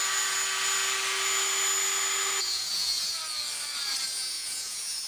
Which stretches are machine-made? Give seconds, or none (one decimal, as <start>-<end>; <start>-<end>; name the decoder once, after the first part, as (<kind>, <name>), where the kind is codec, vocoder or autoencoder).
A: 2.4-3.2 (vocoder, Vocos); 4.3-5.1